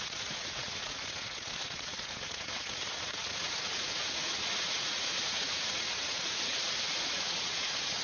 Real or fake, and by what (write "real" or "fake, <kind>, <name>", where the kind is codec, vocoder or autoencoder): fake, vocoder, Vocos